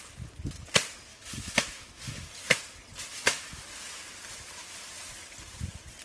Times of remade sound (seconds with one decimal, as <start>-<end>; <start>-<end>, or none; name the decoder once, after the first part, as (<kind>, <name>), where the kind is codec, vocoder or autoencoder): 1.1-2.3 (autoencoder, DAC-VAE); 3.1-3.6